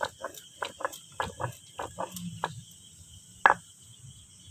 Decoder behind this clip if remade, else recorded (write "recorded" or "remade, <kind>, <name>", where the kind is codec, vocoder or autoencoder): recorded